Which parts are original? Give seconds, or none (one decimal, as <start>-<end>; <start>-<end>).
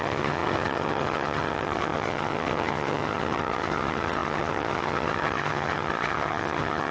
none